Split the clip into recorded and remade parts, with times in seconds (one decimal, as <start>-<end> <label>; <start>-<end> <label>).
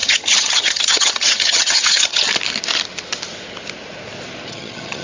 0.0-2.3 remade; 2.3-4.5 recorded; 4.5-5.0 remade